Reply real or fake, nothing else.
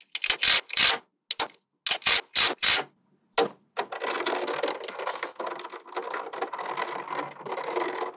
real